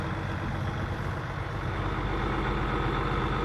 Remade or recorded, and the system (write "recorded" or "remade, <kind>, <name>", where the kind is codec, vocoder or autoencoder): recorded